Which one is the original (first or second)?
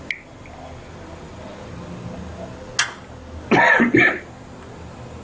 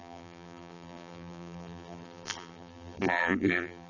first